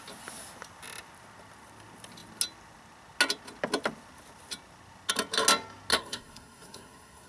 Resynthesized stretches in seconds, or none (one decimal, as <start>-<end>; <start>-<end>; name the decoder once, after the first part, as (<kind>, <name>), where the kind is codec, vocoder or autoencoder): 5.9-7.3 (codec, SNAC)